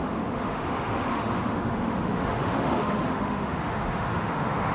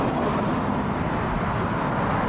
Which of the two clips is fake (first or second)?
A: first